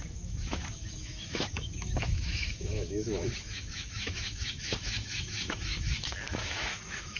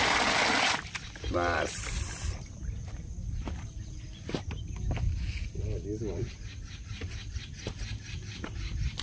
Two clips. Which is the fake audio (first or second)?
first